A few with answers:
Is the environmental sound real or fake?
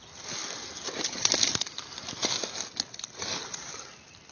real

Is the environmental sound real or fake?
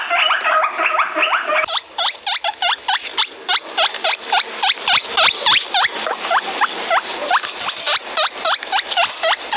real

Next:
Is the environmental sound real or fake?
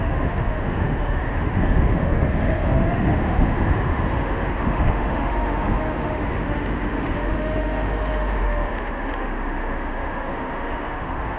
fake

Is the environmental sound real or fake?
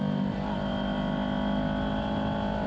real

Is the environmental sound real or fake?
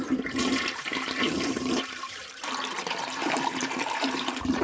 fake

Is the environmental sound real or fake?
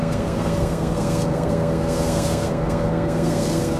fake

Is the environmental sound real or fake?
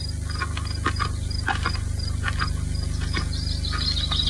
real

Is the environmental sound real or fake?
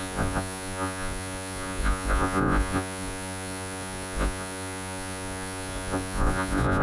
fake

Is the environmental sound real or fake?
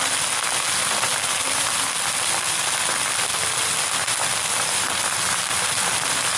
real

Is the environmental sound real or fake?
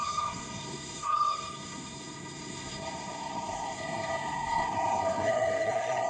fake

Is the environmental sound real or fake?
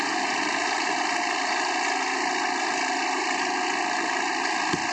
real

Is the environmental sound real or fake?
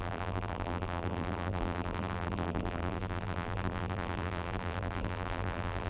fake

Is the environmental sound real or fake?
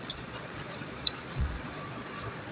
fake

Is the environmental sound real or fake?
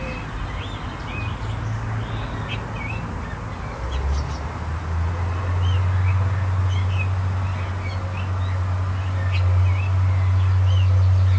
real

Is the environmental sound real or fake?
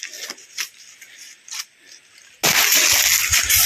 real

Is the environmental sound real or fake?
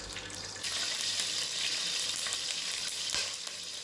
real